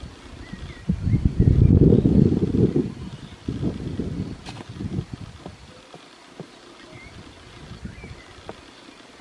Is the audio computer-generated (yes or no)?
no